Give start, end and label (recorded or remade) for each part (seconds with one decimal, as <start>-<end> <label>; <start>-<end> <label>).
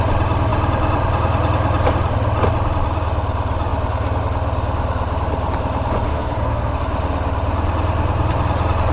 0.0-6.1 recorded; 6.1-6.8 remade; 6.8-8.9 recorded